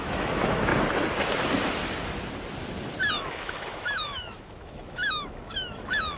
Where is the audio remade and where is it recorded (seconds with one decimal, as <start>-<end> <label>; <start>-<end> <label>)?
0.0-0.7 remade; 0.7-3.1 recorded; 3.1-6.2 remade

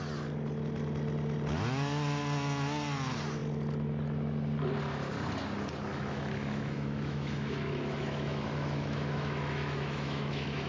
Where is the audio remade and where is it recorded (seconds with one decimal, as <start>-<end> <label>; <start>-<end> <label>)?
0.0-5.9 recorded; 5.9-10.7 remade

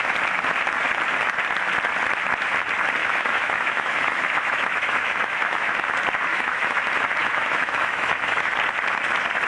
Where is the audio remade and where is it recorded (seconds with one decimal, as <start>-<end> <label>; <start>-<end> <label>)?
0.0-3.0 recorded; 3.0-5.7 remade; 5.7-6.3 recorded; 6.3-6.8 remade; 6.8-7.2 recorded; 7.2-8.5 remade; 8.5-9.5 recorded

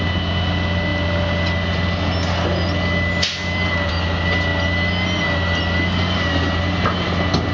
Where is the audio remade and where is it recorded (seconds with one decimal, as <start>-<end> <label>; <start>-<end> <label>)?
0.0-7.5 recorded

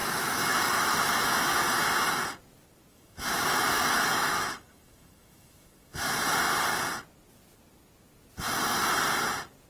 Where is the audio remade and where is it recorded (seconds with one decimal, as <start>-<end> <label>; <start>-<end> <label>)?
0.0-2.1 remade; 2.1-2.9 recorded; 2.9-6.3 remade; 6.3-9.7 recorded